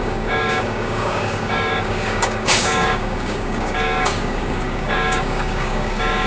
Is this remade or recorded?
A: remade